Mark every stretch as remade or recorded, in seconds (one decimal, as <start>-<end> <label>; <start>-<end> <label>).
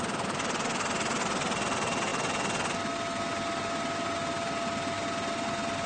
0.0-5.9 recorded